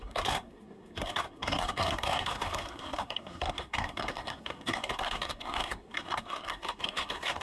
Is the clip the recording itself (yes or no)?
no